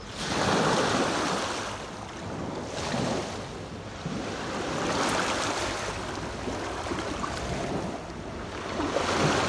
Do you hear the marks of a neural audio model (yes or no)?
no